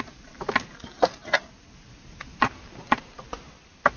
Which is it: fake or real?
real